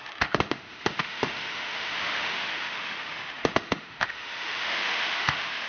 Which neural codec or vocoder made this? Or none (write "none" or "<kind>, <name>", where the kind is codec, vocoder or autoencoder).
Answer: autoencoder, DAC-VAE